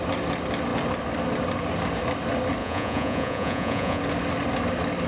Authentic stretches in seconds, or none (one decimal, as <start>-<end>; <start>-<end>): 0.0-2.6; 4.0-5.1